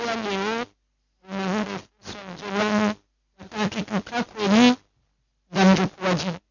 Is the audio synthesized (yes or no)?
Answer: no